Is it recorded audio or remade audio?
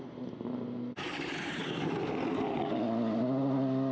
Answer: recorded